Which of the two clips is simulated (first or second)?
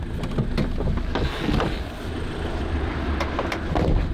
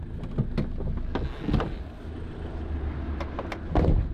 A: first